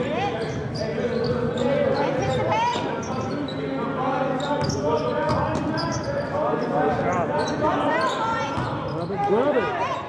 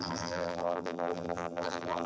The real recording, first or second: first